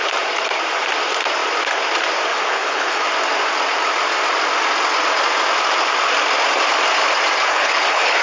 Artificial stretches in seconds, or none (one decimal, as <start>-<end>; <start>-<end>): 2.3-3.0; 7.5-8.2